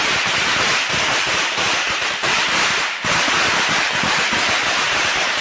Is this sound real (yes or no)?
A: no